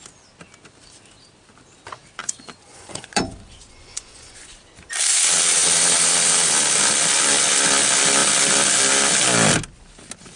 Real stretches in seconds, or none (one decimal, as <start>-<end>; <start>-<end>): 0.0-2.2; 4.6-10.4